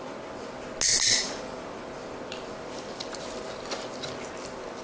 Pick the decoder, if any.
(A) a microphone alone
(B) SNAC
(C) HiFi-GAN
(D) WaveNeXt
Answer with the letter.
A